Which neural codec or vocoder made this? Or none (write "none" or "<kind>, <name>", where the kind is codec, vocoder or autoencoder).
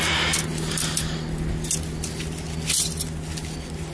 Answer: none